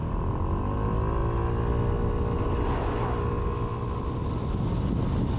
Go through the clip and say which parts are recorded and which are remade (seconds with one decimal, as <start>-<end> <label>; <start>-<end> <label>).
0.0-5.4 recorded